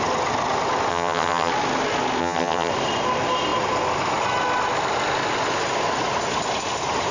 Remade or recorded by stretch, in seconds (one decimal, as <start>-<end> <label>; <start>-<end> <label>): 0.0-0.9 recorded; 0.9-1.5 remade; 1.5-2.2 recorded; 2.2-2.7 remade; 2.7-7.1 recorded